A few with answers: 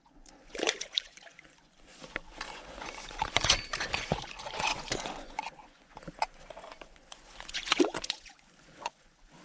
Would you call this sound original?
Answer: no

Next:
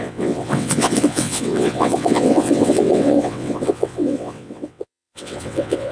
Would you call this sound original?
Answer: no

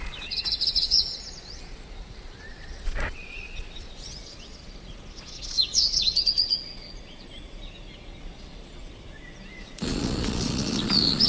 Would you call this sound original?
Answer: no